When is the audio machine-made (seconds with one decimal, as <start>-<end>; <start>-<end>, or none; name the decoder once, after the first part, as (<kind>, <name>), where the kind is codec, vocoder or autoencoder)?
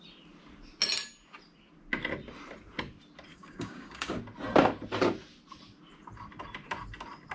3.3-4.2 (codec, DAC)